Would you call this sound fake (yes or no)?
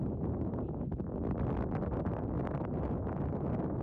no